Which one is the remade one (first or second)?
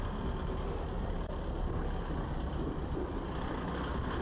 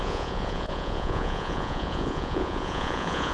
second